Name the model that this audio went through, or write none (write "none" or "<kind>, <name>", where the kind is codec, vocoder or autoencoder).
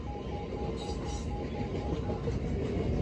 none